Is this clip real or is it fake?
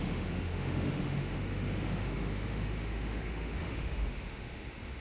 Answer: fake